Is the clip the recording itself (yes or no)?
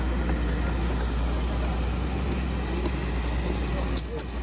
yes